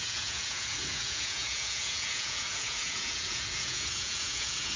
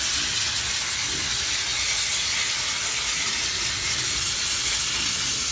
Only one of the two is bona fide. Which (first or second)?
second